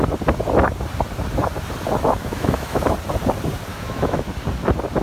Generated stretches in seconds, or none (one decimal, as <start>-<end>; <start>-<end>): 2.2-2.9; 3.7-4.3